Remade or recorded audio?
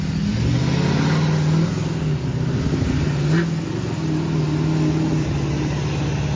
recorded